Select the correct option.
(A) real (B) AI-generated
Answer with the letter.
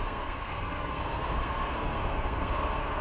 B